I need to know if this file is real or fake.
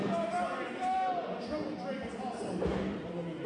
real